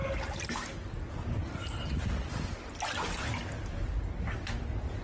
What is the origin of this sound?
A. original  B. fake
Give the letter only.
A